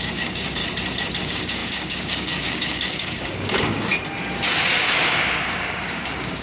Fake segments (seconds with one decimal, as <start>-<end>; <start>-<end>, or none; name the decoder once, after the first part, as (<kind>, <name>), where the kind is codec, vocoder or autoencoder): 0.0-0.6 (codec, DAC); 1.2-3.9; 4.7-6.4